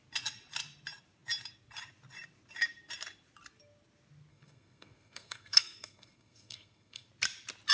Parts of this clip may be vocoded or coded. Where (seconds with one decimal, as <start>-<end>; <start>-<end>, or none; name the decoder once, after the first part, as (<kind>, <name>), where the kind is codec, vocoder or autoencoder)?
4.3-7.1 (codec, SNAC)